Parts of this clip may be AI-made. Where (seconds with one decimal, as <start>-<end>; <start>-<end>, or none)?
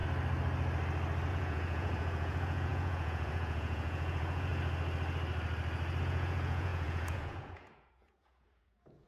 1.3-4.5; 6.0-9.1